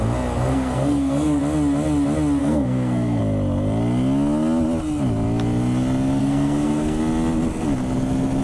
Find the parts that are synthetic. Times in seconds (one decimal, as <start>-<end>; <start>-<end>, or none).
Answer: 0.5-1.4; 2.4-3.2; 6.2-7.0